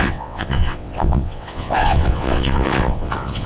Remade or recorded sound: remade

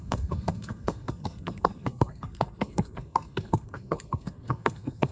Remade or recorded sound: remade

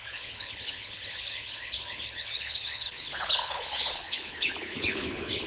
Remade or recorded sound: remade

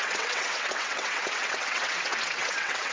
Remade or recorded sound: remade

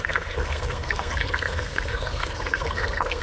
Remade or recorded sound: remade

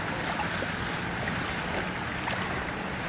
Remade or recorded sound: recorded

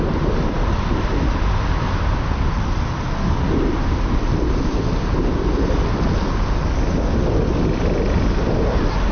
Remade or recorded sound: recorded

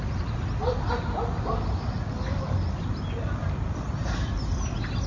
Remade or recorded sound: recorded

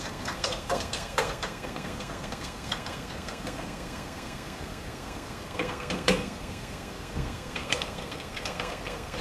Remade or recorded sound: remade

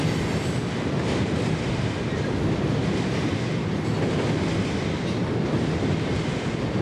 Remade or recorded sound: recorded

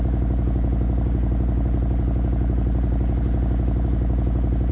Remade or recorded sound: recorded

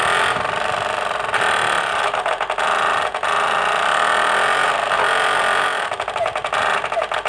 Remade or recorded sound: recorded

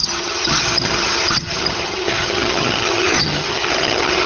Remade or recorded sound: remade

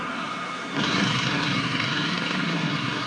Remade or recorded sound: remade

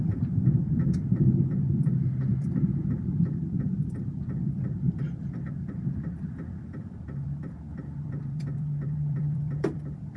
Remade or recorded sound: remade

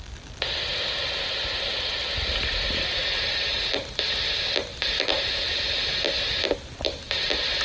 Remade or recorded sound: recorded